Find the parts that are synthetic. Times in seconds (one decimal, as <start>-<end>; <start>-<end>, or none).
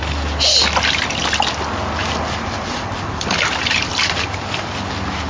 2.0-5.3